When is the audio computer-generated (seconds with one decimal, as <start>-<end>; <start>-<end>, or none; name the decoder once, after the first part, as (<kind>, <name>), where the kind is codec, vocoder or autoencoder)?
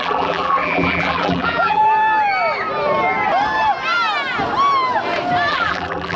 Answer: 0.0-1.8 (vocoder, BigVGAN v2); 5.5-6.2